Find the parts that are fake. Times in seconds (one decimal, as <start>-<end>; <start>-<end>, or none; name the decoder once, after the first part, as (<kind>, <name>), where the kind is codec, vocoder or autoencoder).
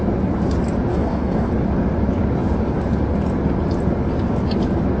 0.9-1.5 (codec, DAC)